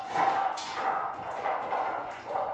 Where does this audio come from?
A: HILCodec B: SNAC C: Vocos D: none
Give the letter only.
C